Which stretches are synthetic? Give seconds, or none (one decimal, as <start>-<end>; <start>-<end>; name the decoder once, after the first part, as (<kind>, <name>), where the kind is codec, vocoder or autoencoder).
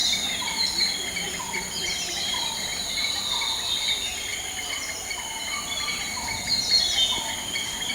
2.1-2.7 (vocoder, BigVGAN v2); 7.4-7.9